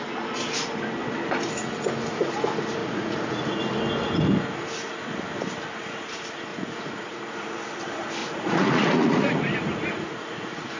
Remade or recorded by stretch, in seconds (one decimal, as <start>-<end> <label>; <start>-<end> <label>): 0.0-2.8 recorded; 2.8-3.6 remade; 3.6-6.5 recorded; 6.5-7.2 remade; 7.2-8.2 recorded; 8.2-10.8 remade